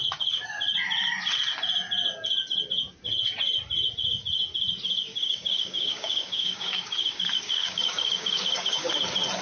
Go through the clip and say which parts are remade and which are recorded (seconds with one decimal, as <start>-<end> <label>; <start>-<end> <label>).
0.0-5.1 recorded; 5.1-8.9 remade; 8.9-9.4 recorded